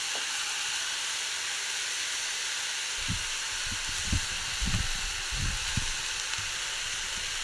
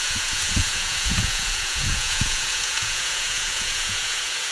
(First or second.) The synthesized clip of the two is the second